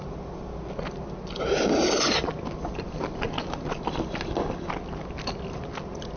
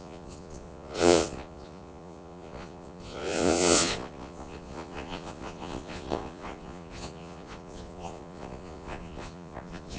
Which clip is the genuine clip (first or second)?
first